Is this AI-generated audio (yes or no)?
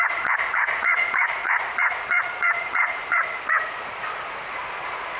yes